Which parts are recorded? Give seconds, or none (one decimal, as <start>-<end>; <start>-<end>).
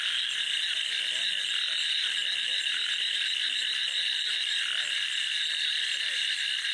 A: 0.0-6.7